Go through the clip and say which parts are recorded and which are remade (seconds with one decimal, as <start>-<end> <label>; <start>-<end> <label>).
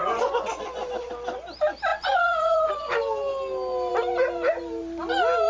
0.0-1.1 remade; 1.1-1.9 recorded; 1.9-2.7 remade; 2.7-5.5 recorded